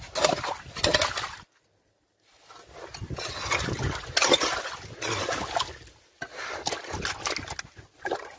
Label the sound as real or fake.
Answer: real